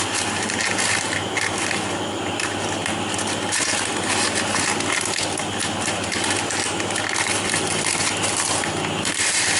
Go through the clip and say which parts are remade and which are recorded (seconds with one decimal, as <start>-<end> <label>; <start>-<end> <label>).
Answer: 0.0-9.6 recorded